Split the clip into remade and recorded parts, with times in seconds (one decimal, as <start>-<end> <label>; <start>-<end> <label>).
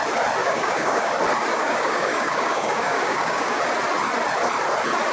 0.0-0.4 recorded; 0.4-1.1 remade; 1.1-1.5 recorded; 1.5-3.6 remade; 3.6-5.1 recorded